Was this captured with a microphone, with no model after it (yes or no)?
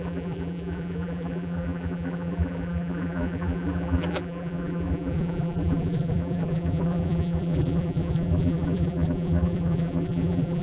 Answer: no